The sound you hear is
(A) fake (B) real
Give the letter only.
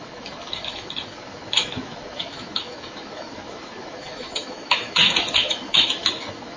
A